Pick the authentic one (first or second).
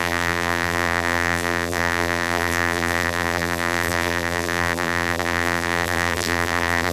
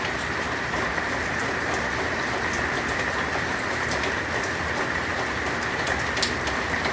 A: second